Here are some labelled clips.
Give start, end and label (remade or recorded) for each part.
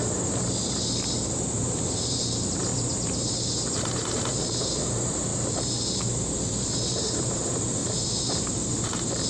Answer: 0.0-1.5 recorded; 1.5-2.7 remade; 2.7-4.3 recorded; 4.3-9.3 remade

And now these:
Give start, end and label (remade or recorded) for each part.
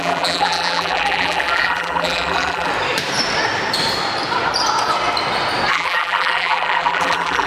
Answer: 0.0-2.7 remade; 2.7-5.7 recorded; 5.7-7.5 remade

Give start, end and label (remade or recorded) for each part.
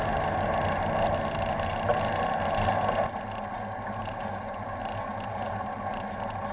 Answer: 0.0-4.0 recorded; 4.0-5.0 remade; 5.0-6.5 recorded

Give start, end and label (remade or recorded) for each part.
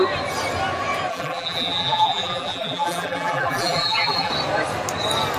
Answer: 0.0-1.1 recorded; 1.1-4.3 remade; 4.3-5.4 recorded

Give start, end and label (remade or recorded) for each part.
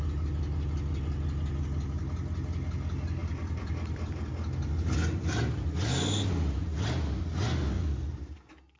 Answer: 0.0-3.2 recorded; 3.2-4.3 remade; 4.3-5.0 recorded; 5.0-5.7 remade; 5.7-8.8 recorded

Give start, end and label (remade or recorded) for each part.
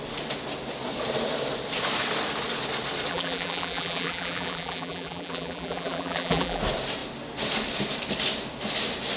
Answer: 0.0-3.1 recorded; 3.1-6.6 remade; 6.6-9.2 recorded